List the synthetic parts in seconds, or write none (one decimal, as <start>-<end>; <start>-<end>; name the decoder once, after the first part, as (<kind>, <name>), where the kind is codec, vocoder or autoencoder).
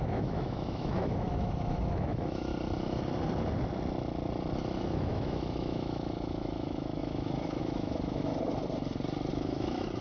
0.0-2.5 (autoencoder, DAC-VAE); 4.8-8.3; 9.3-10.0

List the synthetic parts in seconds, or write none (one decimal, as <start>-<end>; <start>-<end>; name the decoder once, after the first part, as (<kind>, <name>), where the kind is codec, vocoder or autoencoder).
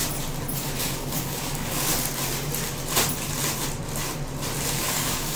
0.8-1.9 (codec, DAC); 4.7-5.4